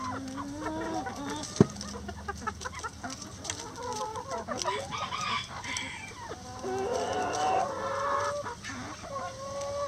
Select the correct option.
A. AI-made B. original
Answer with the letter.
B